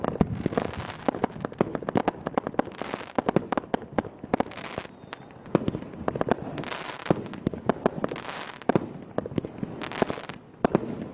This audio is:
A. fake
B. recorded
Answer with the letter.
B